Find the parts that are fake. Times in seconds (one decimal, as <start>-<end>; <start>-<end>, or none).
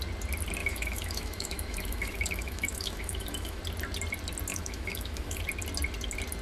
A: 0.6-3.6; 4.5-5.4